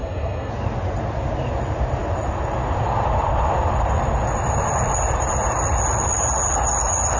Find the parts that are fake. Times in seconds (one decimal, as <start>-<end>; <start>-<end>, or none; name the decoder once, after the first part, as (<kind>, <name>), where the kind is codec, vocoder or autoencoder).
0.0-0.5 (codec, SNAC)